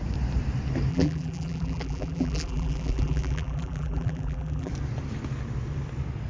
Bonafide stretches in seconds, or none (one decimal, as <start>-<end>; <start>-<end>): 0.0-0.9; 4.7-6.3